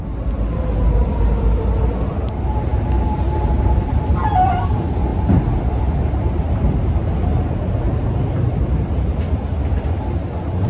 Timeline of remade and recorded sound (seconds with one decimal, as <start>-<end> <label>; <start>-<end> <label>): 0.0-10.7 recorded